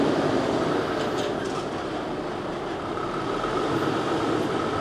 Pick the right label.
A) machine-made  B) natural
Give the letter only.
B